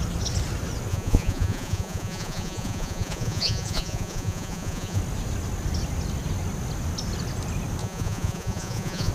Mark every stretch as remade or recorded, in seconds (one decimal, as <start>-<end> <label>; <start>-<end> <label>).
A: 0.0-0.9 recorded; 0.9-5.0 remade; 5.0-7.8 recorded; 7.8-9.1 remade